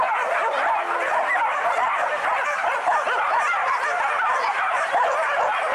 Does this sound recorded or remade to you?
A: recorded